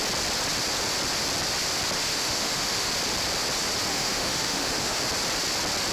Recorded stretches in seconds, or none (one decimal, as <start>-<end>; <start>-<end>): 0.0-2.1; 2.9-3.9; 5.0-5.9